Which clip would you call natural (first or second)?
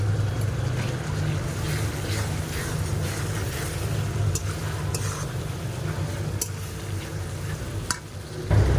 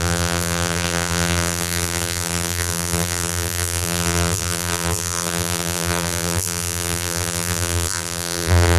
first